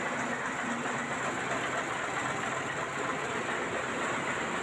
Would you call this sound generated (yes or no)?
no